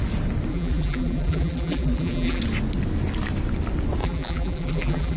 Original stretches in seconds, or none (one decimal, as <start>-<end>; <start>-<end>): 0.0-0.5; 2.4-4.0